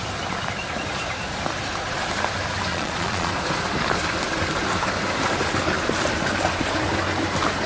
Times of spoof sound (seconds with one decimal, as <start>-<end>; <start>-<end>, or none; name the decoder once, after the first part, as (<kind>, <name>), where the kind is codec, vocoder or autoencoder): 2.7-3.3 (vocoder, Vocos)